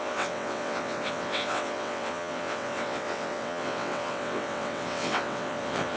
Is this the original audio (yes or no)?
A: no